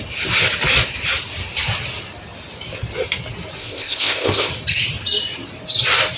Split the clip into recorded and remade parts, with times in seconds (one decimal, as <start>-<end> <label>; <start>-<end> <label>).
0.0-3.6 recorded; 3.6-4.5 remade; 4.5-6.2 recorded